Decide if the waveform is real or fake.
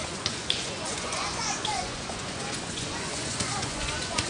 fake